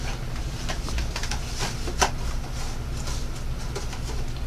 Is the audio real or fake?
real